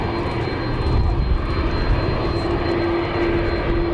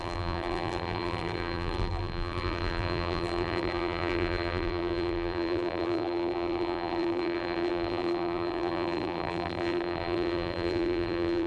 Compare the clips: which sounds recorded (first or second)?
first